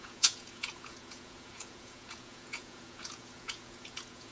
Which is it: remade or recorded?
remade